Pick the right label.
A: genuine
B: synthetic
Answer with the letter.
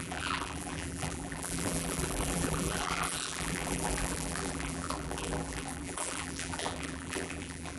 B